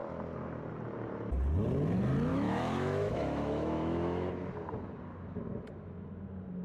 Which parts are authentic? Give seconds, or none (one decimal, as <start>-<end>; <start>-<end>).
0.0-2.3; 4.3-6.6